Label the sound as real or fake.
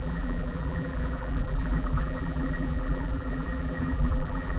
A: fake